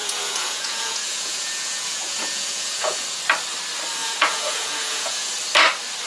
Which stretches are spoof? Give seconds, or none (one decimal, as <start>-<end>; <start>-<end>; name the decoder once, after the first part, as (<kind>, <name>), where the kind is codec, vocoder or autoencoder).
0.0-3.2 (vocoder, Vocos); 4.0-5.3